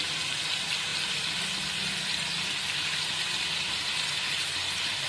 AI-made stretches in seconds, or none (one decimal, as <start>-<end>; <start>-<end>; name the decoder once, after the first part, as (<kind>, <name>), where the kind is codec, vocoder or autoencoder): none